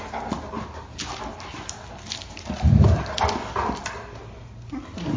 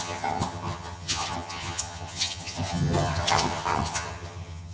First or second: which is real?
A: first